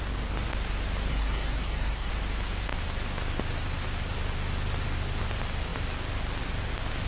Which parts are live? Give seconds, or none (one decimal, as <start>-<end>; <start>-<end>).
0.0-1.1; 2.1-7.1